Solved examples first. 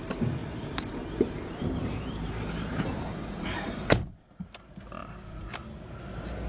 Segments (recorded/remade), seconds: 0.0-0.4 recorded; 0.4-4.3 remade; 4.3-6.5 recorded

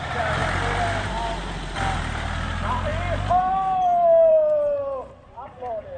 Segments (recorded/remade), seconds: 0.0-6.0 recorded

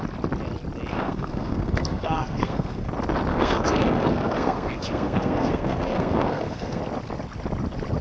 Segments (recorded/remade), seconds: 0.0-0.9 recorded; 0.9-2.9 remade; 2.9-3.3 recorded; 3.3-6.8 remade; 6.8-8.0 recorded

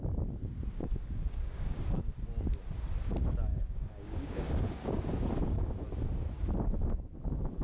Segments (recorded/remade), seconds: 0.0-0.8 recorded; 0.8-2.0 remade; 2.0-3.5 recorded; 3.5-5.3 remade; 5.3-7.6 recorded

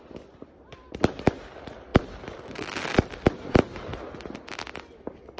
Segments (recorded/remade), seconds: 0.0-5.4 recorded

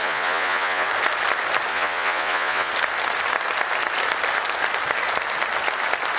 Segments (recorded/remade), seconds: 0.0-0.9 remade; 0.9-1.7 recorded; 1.7-2.7 remade; 2.7-6.2 recorded

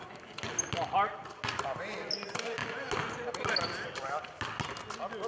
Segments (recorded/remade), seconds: 0.0-5.3 recorded